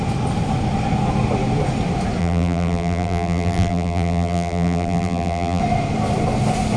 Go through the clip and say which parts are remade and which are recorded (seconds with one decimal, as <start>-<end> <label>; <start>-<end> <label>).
0.0-2.2 recorded; 2.2-5.6 remade; 5.6-6.8 recorded